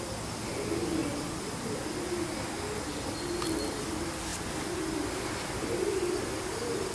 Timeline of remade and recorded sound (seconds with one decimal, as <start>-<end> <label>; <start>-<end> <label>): 0.0-1.0 recorded; 1.0-1.7 remade; 1.7-4.3 recorded; 4.3-6.2 remade; 6.2-6.9 recorded